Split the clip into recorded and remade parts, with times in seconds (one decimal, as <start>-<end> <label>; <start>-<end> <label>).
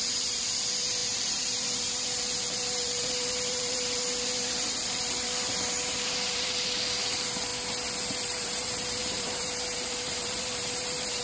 0.0-7.5 remade; 7.5-8.0 recorded; 8.0-11.2 remade